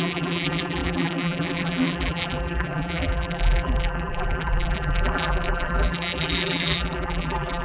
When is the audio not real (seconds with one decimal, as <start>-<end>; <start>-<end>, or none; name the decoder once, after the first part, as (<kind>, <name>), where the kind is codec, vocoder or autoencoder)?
0.0-7.6 (vocoder, BigVGAN v2)